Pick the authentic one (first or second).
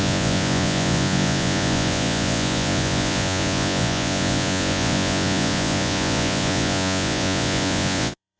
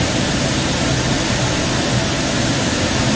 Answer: second